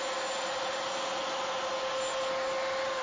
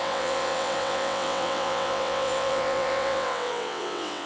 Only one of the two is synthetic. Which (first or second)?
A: second